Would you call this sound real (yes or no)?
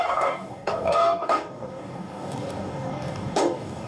no